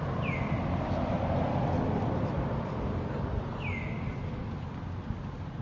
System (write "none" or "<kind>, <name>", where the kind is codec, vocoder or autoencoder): vocoder, BigVGAN v2